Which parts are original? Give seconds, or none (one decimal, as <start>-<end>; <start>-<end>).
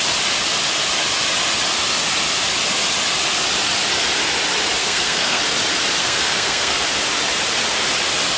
0.0-4.8; 5.4-6.0; 6.8-8.4